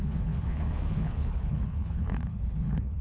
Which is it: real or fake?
fake